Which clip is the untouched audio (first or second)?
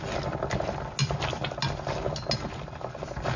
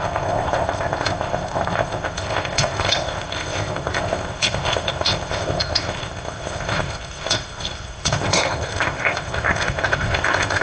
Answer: first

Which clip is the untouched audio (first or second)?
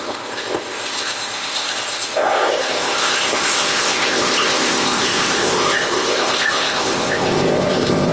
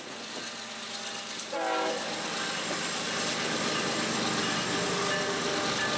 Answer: second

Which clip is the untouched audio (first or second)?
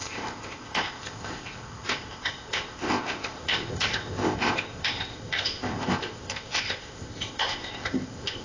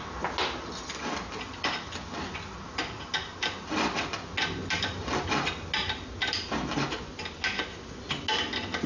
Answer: second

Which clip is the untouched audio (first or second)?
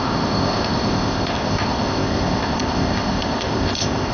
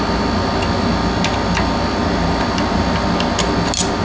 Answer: second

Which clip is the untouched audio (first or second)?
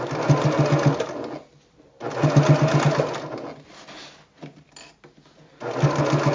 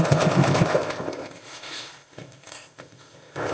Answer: first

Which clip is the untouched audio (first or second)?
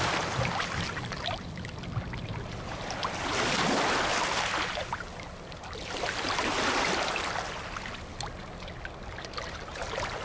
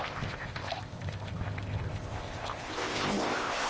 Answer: first